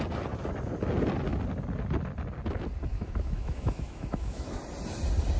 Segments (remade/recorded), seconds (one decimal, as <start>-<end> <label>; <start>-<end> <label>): 0.0-2.9 recorded; 2.9-4.6 remade; 4.6-5.4 recorded